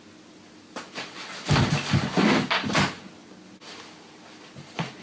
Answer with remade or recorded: recorded